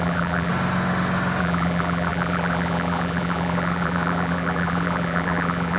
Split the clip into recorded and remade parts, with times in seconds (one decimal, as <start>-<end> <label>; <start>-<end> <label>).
0.0-0.5 remade; 0.5-1.4 recorded; 1.4-5.8 remade